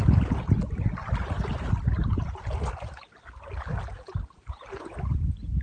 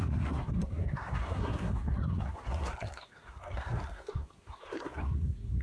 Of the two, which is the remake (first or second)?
second